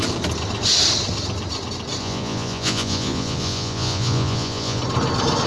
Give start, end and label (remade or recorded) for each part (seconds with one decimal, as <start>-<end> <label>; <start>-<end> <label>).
0.0-2.0 recorded; 2.0-4.8 remade; 4.8-5.5 recorded